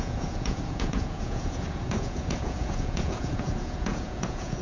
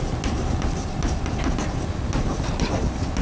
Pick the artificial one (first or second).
first